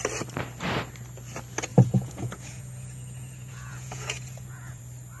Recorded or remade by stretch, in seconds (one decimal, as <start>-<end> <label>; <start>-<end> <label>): 0.0-1.7 recorded; 1.7-4.8 remade; 4.8-5.2 recorded